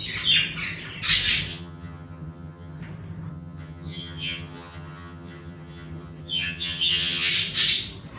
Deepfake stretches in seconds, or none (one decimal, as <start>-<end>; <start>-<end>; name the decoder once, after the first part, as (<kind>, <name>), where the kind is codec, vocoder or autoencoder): 1.5-2.8 (vocoder, HiFi-GAN); 3.3-7.3